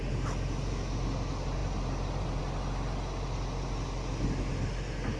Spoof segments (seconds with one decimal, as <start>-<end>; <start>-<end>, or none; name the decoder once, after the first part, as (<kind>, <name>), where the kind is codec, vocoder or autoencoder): none